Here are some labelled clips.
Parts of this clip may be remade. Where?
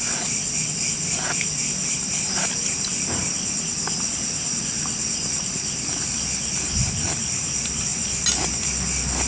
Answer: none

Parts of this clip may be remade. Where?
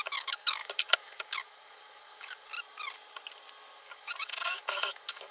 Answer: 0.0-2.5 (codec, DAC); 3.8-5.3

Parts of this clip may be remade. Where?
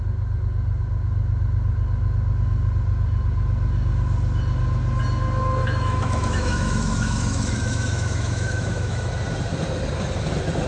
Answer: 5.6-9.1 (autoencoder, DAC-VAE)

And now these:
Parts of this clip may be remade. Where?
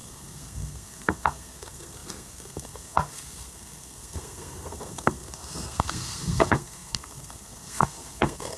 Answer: 0.0-8.6 (codec, SNAC)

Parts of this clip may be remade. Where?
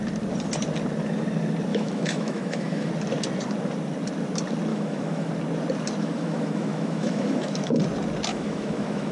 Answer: 1.7-2.9 (autoencoder, DAC-VAE); 4.7-5.3; 6.0-7.8; 8.3-9.1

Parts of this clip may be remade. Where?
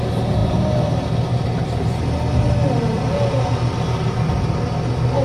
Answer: none